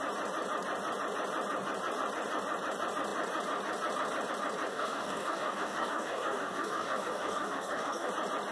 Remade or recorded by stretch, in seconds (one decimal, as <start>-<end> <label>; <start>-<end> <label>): 0.0-4.7 recorded; 4.7-8.1 remade; 8.1-8.5 recorded